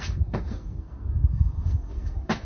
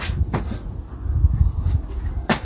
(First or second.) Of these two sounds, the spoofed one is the first